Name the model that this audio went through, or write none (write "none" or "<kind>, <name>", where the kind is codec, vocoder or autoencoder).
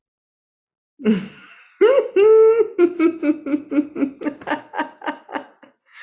none